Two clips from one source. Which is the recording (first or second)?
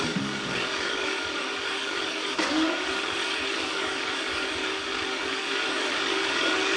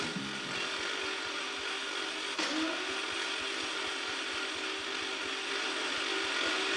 second